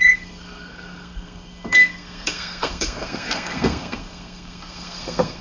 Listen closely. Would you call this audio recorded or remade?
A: remade